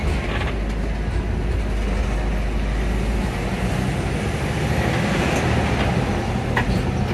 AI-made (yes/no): no